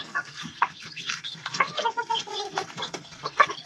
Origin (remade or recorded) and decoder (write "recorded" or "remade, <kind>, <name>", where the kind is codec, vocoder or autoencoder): remade, codec, SNAC